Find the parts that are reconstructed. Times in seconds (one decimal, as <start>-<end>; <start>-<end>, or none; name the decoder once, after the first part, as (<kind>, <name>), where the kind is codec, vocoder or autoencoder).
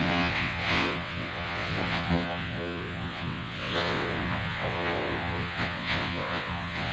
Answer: 0.0-6.9 (vocoder, WaveNeXt)